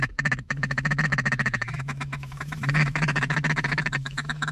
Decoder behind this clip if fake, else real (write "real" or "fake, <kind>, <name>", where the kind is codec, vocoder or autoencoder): fake, autoencoder, DAC-VAE